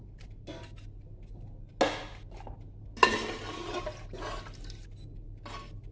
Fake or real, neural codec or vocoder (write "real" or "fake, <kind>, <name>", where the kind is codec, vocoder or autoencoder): real